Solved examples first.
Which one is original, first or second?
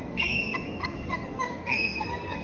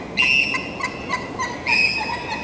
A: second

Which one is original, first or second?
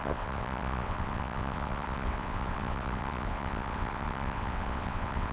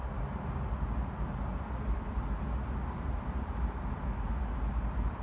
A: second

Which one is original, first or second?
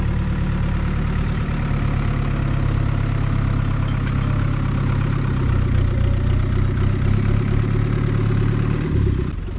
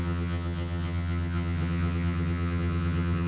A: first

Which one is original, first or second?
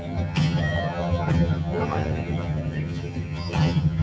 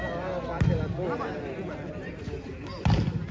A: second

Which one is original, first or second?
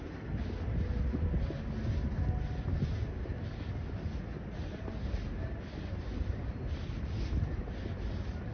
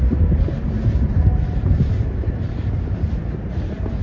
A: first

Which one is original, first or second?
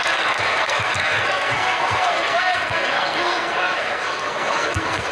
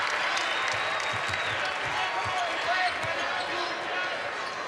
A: second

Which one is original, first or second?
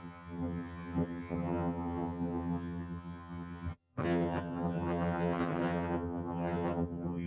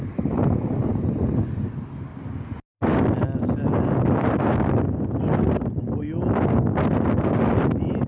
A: second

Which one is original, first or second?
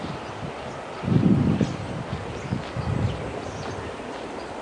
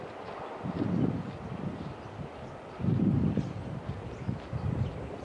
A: first